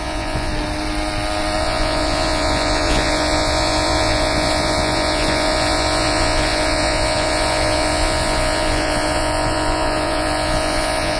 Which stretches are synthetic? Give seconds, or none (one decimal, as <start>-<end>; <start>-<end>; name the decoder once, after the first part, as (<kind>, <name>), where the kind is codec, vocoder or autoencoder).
0.0-0.5 (vocoder, Vocos); 1.6-11.2